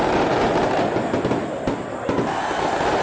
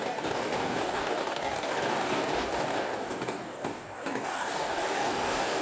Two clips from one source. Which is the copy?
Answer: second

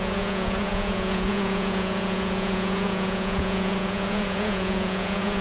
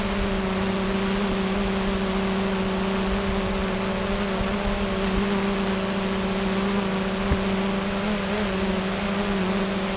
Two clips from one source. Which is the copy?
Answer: first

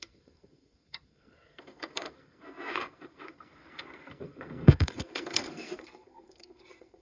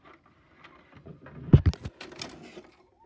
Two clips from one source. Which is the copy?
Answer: first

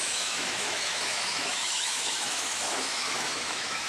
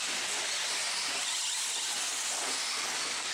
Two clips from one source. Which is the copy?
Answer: first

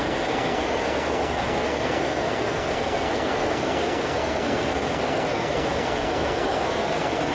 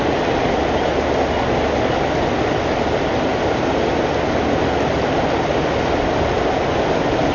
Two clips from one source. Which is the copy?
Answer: first